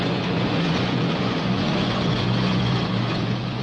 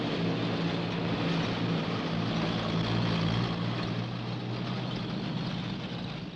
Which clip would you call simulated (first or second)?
first